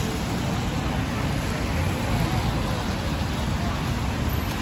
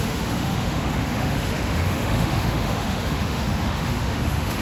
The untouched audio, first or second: first